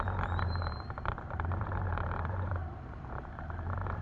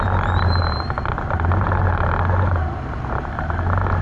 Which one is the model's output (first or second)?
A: first